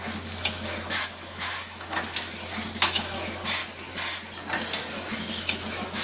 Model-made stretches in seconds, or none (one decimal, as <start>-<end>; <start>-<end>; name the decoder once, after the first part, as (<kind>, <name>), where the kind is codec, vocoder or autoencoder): 0.0-3.6 (autoencoder, DAC-VAE); 4.9-6.0